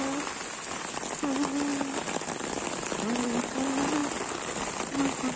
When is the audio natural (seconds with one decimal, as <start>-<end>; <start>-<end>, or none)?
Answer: 0.0-5.4